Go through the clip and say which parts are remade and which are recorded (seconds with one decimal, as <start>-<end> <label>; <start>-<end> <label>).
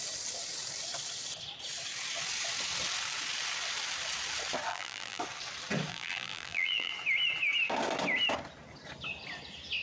0.0-4.7 recorded; 4.7-5.2 remade; 5.2-5.9 recorded; 5.9-6.9 remade; 6.9-9.8 recorded